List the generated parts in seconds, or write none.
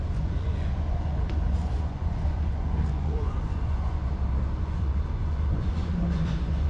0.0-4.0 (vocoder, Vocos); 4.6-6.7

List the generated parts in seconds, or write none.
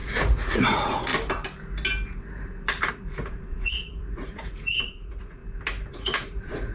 0.0-1.1 (vocoder, Vocos); 2.9-5.4; 5.9-6.7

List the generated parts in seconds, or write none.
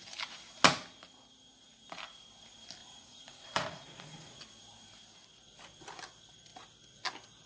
2.8-4.4 (vocoder, Vocos)